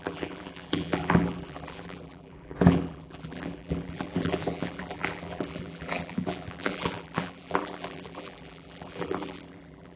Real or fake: fake